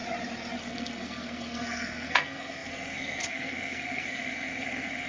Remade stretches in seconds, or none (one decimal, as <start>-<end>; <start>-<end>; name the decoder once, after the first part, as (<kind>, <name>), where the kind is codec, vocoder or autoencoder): 0.6-5.1 (codec, SNAC)